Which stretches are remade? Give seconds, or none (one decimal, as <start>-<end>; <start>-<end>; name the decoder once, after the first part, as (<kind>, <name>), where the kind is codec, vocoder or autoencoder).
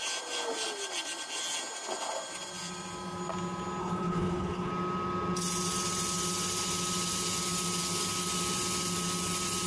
3.8-4.7 (codec, HILCodec)